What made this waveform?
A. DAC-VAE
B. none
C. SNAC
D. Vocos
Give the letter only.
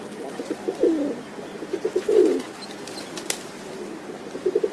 B